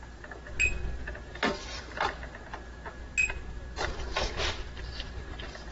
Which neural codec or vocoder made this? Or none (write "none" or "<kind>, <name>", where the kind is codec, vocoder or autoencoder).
none